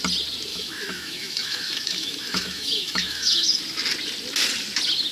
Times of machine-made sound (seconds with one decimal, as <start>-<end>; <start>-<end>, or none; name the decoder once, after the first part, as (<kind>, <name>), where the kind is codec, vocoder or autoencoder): 0.5-3.6 (autoencoder, DAC-VAE)

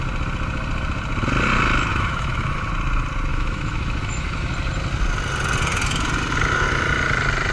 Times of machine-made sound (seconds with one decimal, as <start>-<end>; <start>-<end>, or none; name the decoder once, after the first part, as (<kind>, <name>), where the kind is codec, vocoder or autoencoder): 1.9-2.7 (autoencoder, DAC-VAE); 3.3-4.5

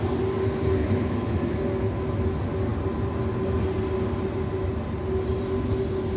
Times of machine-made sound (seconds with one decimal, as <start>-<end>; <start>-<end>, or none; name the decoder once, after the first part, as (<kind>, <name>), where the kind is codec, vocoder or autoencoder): 0.8-1.4 (autoencoder, DAC-VAE)

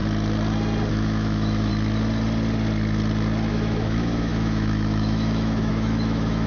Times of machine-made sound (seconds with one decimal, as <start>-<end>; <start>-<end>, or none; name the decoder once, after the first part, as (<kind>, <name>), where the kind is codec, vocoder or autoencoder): 0.9-1.7 (autoencoder, DAC-VAE); 3.5-6.5

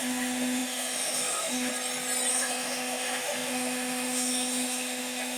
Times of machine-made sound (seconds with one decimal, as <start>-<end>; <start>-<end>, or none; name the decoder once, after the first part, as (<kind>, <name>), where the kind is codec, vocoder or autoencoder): 0.0-1.7 (autoencoder, DAC-VAE); 2.3-5.4

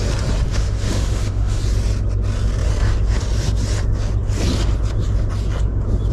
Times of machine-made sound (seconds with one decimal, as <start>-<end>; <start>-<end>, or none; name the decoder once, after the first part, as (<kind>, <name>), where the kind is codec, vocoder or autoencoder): 0.5-1.6 (autoencoder, DAC-VAE)

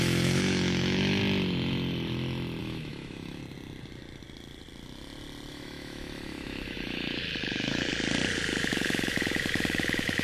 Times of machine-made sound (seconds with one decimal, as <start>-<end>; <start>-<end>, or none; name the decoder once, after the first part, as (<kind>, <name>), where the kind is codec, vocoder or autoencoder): 0.0-1.2 (autoencoder, DAC-VAE); 2.6-3.4; 5.5-7.9; 8.6-10.2